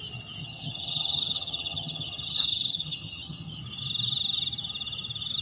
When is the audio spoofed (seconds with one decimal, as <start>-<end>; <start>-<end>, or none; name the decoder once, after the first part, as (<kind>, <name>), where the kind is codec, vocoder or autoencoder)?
0.4-3.6 (vocoder, HiFi-GAN)